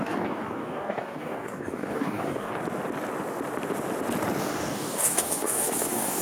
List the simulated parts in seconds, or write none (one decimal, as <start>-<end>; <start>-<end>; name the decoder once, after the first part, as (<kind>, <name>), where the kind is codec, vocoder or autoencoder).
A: 0.0-2.5 (codec, DAC); 4.4-6.2